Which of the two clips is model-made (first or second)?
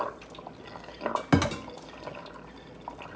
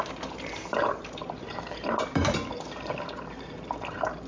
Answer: second